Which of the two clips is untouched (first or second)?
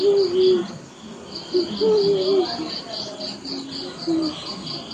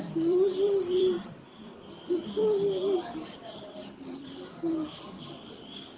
first